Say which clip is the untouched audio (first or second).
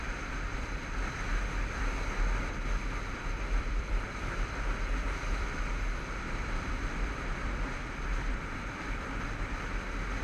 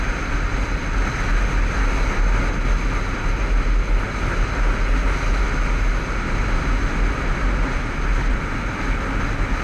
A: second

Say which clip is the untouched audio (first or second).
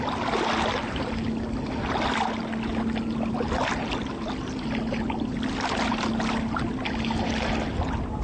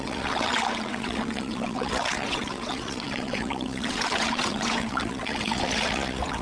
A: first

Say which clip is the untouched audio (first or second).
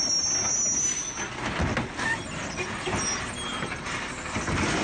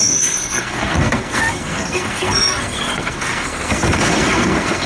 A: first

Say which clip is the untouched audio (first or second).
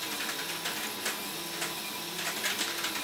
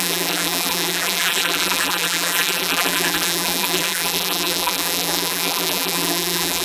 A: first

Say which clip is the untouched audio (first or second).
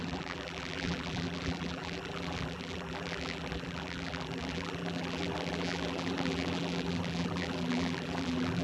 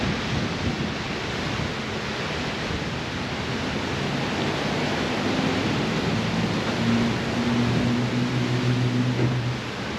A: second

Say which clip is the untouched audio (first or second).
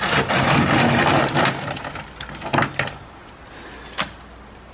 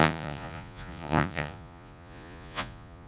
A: first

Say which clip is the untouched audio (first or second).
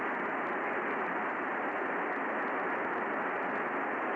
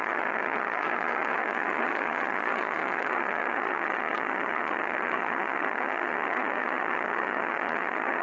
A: first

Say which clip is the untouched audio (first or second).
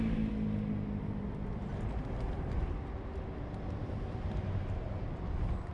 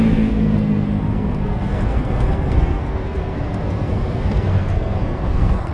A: first